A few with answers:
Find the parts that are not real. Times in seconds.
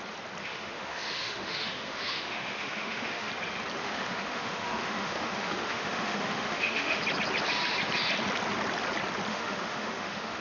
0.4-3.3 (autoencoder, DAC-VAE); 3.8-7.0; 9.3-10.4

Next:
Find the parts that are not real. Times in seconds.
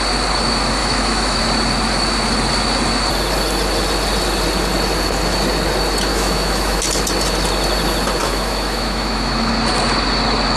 0.8-1.4 (autoencoder, DAC-VAE); 6.1-6.8; 8.2-9.5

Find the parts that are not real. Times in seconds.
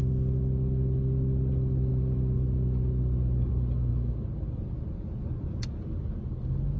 none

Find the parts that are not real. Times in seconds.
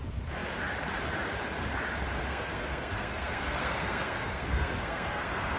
2.3-5.6 (codec, SNAC)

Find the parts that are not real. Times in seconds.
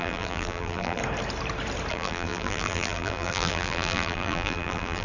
0.0-1.0 (vocoder, BigVGAN v2); 1.9-5.0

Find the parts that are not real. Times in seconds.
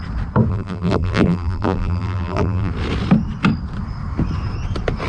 0.5-2.7 (vocoder, BigVGAN v2)